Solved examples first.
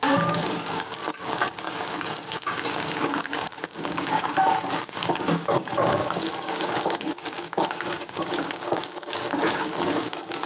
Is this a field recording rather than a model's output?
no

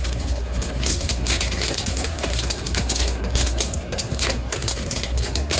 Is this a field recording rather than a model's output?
no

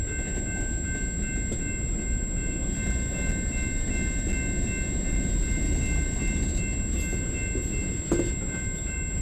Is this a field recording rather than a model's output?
yes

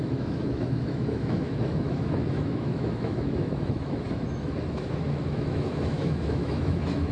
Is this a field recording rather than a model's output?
no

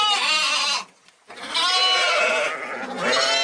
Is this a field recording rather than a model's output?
yes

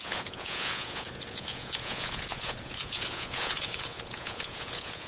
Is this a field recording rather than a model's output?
no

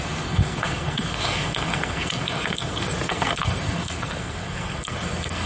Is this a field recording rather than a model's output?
no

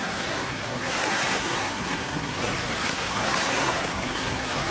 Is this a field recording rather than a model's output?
no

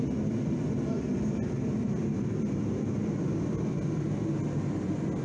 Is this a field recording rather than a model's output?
yes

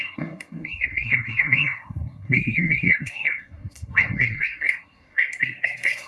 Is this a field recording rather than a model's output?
no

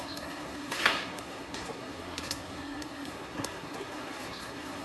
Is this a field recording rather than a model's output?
no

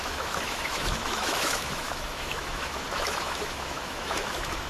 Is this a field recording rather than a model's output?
no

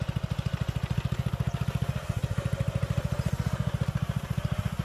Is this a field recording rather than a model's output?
yes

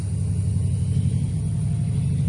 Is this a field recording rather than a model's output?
yes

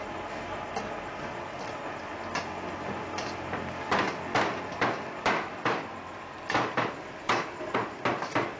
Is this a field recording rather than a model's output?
yes